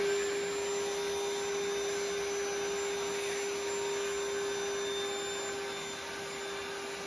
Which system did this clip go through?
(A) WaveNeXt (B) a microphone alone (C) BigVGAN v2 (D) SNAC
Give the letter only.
B